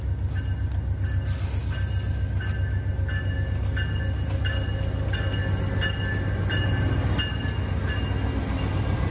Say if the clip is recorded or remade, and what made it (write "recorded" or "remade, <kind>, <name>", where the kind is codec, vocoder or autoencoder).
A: recorded